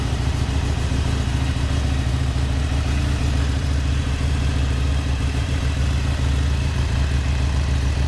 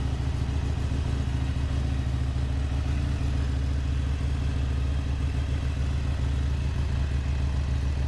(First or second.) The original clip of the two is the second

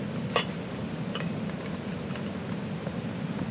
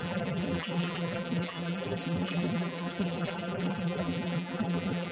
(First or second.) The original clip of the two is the first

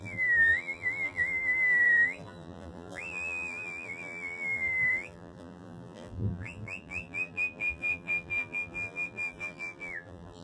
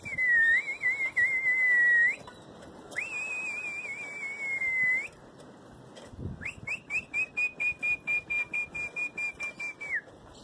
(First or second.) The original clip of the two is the second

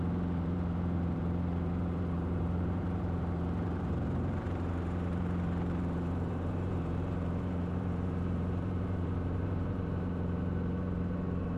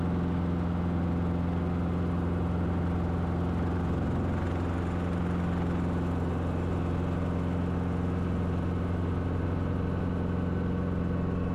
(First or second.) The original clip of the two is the second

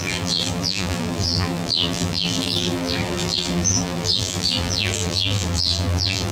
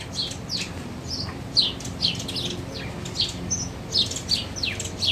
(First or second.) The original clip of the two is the second